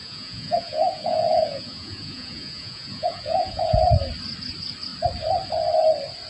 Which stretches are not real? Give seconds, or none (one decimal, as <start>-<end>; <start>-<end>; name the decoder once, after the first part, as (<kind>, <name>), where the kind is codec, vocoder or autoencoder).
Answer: 0.0-3.8 (vocoder, Vocos)